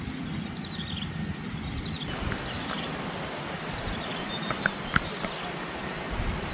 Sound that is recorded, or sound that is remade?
remade